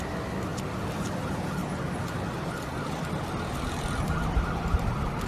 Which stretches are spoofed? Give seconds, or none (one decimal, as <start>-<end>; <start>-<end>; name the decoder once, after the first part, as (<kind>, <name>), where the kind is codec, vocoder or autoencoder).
none